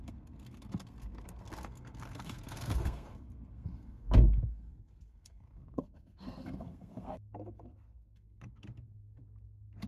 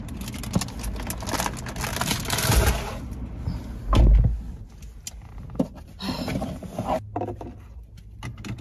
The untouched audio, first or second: second